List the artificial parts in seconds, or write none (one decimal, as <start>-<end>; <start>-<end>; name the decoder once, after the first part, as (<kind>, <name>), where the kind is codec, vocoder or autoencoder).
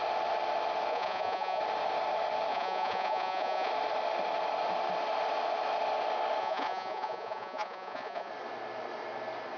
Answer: 0.9-1.6 (vocoder, Vocos); 2.5-3.7; 6.4-8.3